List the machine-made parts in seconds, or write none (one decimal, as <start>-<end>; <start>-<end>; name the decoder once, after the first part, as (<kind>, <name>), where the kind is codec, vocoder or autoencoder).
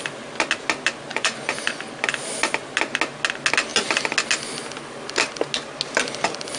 1.1-1.8 (vocoder, Vocos)